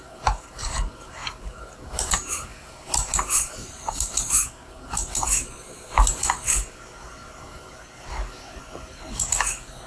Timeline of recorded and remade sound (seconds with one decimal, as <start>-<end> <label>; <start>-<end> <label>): 0.0-9.9 remade